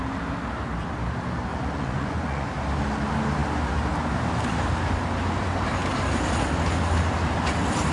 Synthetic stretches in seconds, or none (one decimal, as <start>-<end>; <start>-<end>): 1.5-2.5